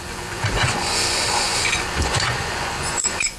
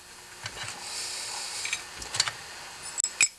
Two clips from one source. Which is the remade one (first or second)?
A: first